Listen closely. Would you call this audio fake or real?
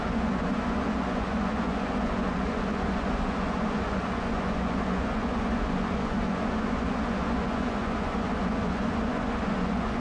fake